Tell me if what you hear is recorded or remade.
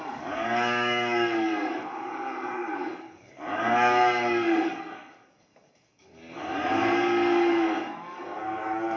remade